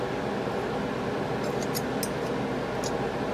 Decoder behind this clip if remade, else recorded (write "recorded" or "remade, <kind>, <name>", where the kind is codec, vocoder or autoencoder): recorded